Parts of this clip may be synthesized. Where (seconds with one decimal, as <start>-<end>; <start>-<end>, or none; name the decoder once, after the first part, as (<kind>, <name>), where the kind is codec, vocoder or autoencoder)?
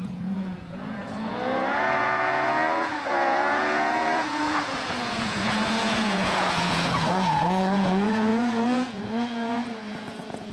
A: 0.0-10.5 (vocoder, Vocos)